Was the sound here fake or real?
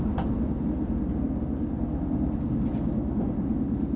real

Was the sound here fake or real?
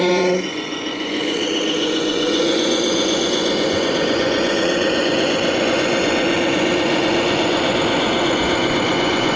fake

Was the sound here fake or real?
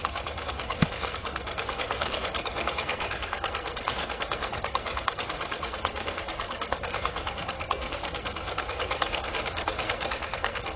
fake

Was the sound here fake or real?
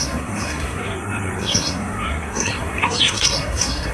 fake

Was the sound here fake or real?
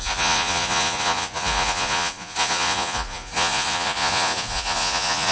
fake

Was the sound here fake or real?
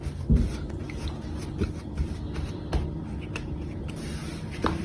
real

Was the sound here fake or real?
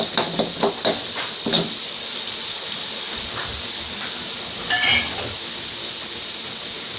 real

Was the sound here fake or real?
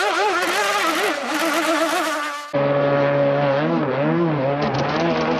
real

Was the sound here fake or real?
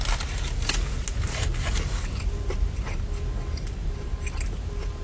real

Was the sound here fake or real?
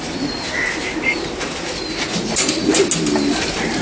real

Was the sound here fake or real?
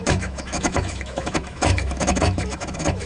fake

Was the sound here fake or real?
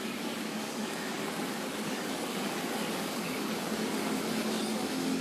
fake